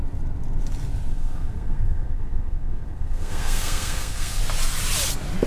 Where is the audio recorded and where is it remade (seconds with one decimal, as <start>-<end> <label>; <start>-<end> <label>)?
0.0-1.1 recorded; 1.1-4.4 remade; 4.4-5.5 recorded

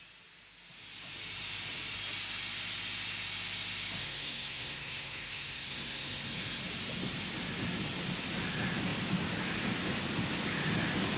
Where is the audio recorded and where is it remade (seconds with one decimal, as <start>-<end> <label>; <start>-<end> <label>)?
0.0-4.0 recorded; 4.0-6.6 remade; 6.6-11.2 recorded

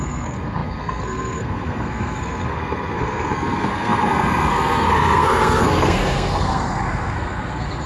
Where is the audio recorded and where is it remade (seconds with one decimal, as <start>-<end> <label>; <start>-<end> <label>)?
0.0-7.9 remade

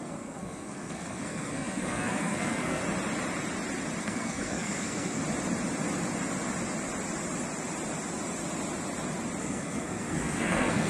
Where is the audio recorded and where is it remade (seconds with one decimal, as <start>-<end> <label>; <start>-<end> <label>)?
0.0-2.8 remade; 2.8-4.0 recorded; 4.0-5.2 remade; 5.2-9.4 recorded; 9.4-10.9 remade

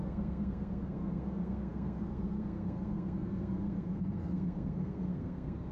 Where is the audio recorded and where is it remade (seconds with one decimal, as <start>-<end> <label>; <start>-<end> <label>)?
0.0-5.7 remade